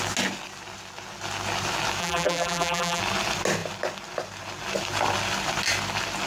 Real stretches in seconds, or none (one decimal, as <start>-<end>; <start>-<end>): 0.0-2.0; 3.0-6.3